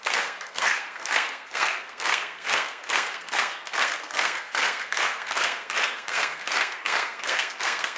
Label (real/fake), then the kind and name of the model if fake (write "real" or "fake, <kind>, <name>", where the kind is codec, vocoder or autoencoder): fake, codec, SNAC